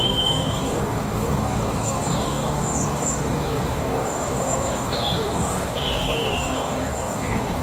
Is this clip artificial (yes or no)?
yes